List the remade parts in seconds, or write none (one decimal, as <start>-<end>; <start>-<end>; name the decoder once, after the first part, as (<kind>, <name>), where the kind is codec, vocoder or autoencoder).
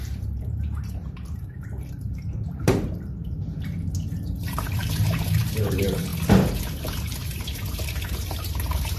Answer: 0.0-6.1 (vocoder, BigVGAN v2); 6.7-9.0